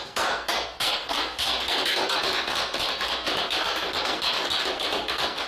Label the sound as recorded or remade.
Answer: remade